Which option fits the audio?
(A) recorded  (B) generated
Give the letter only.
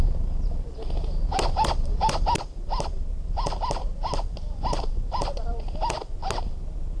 A